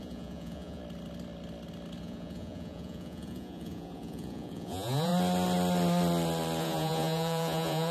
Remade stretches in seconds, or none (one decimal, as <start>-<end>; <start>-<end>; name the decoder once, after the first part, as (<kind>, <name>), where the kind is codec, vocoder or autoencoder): 0.0-0.8 (vocoder, Vocos); 2.0-5.1; 6.6-7.9